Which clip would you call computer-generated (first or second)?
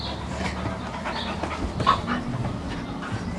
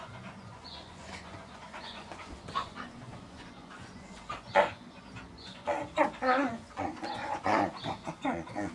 second